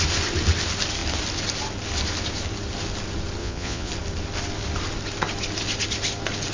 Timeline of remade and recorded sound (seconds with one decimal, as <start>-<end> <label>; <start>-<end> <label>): 0.0-3.4 recorded; 3.4-3.9 remade; 3.9-6.5 recorded